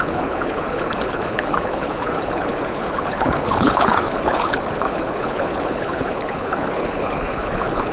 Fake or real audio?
fake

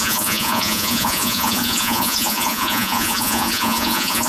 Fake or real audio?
fake